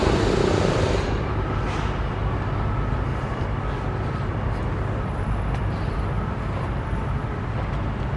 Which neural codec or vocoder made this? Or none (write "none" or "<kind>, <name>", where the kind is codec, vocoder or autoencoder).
none